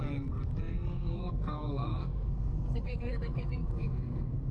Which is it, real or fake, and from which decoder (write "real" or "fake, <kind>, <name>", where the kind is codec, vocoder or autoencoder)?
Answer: fake, codec, SNAC